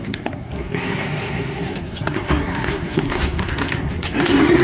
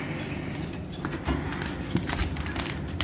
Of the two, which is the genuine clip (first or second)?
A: second